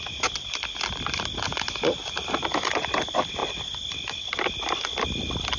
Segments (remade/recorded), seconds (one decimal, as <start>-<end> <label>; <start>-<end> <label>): 0.0-5.6 recorded